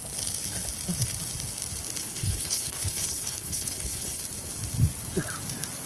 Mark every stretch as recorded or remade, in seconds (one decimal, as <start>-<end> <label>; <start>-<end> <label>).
0.0-2.0 recorded; 2.0-4.2 remade; 4.2-5.9 recorded